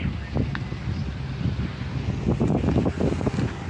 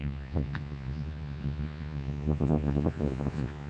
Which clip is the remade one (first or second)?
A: second